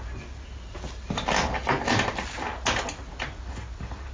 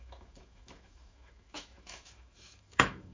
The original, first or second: first